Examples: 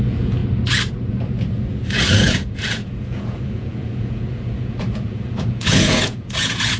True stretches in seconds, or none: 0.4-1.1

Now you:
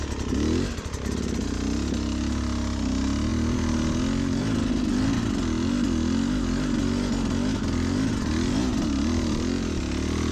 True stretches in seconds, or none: 0.0-10.3